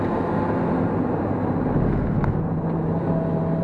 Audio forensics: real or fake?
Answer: real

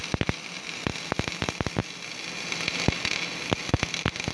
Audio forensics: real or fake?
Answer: real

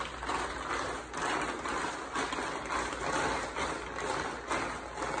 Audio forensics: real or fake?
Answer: real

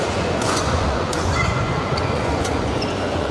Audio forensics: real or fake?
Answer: fake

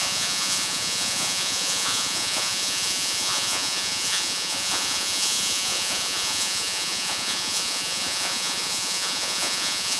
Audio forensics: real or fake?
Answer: fake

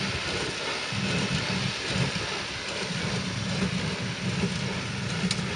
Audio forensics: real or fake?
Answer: real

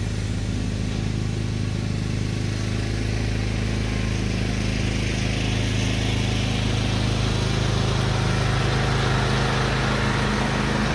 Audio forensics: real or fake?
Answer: real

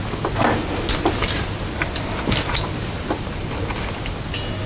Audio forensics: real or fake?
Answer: real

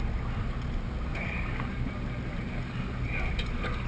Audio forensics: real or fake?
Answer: real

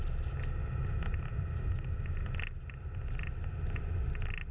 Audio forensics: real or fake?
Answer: real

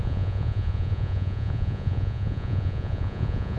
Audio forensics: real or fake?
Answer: fake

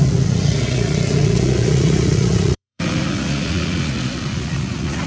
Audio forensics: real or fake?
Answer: fake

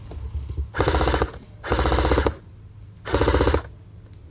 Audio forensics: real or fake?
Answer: real